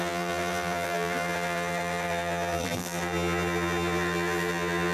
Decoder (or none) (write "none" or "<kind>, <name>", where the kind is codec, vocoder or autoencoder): vocoder, BigVGAN v2